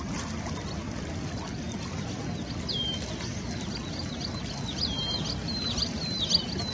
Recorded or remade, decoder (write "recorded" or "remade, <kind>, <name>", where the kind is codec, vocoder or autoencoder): recorded